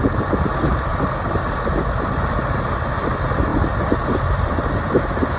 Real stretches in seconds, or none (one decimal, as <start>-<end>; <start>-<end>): 0.0-5.4